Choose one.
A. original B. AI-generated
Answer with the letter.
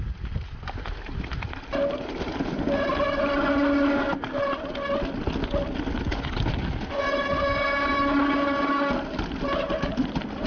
A